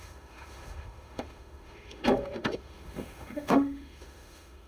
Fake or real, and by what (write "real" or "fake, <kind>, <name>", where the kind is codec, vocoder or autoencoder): fake, autoencoder, DAC-VAE